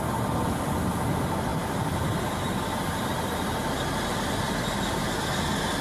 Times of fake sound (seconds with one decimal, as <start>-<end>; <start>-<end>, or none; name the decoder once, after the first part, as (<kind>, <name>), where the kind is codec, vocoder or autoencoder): none